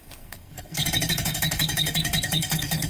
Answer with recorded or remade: remade